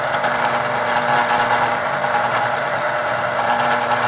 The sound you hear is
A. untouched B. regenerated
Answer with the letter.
A